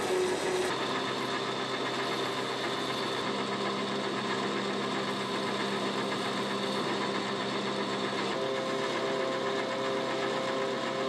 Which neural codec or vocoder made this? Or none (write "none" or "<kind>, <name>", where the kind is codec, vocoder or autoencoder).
none